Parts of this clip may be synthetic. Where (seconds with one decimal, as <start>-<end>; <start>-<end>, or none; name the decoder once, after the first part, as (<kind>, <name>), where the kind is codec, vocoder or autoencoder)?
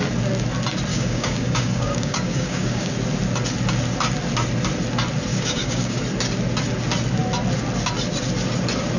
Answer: 0.9-2.9 (codec, DAC); 5.3-6.0